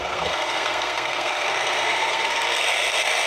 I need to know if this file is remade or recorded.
remade